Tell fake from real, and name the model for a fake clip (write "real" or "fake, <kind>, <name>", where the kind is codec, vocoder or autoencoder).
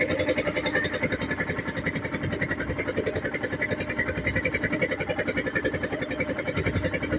real